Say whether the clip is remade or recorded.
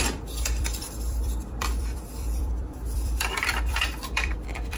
remade